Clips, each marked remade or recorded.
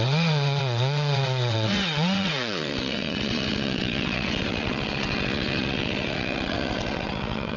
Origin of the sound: remade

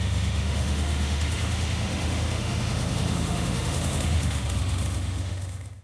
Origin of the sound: remade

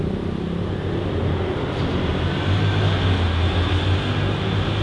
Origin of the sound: recorded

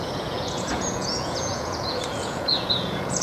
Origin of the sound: remade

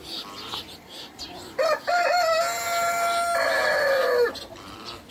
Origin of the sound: recorded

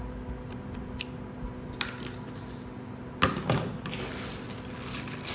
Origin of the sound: recorded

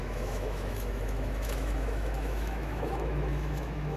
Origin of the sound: remade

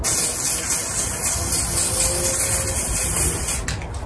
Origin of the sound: recorded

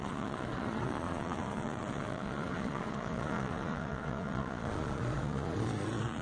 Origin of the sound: remade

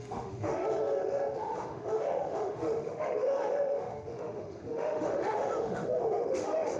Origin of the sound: remade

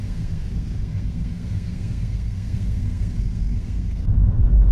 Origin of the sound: remade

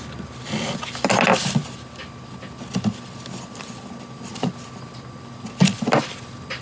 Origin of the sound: recorded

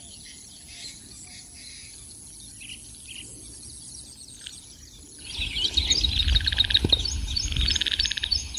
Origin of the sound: recorded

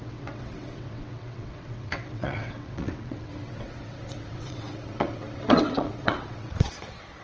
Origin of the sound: remade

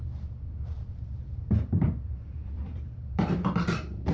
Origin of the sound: remade